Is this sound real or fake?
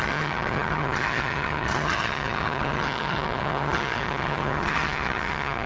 fake